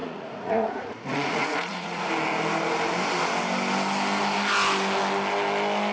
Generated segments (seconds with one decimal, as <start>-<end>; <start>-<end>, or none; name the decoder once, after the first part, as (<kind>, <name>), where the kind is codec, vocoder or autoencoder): 0.0-2.1 (vocoder, Vocos)